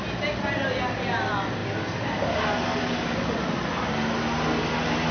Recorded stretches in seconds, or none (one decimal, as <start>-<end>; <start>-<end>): 0.0-5.1